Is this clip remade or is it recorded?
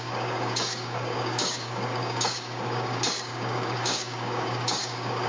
remade